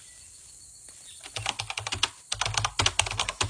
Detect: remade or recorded recorded